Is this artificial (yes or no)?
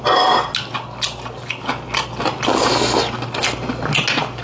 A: no